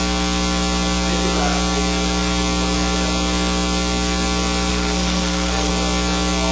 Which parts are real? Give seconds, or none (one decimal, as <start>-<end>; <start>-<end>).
0.0-4.7; 5.7-6.5